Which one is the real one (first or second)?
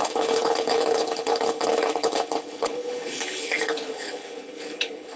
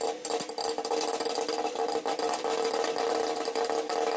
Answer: second